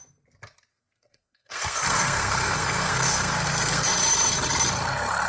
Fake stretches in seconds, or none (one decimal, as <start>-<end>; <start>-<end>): 0.7-3.9